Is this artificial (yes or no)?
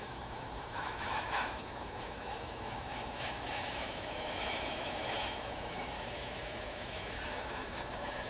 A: yes